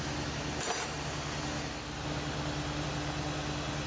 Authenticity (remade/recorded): recorded